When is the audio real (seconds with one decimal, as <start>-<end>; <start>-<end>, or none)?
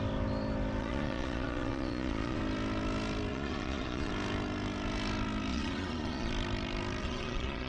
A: 0.0-0.8; 2.4-3.3; 4.1-5.5; 6.3-7.0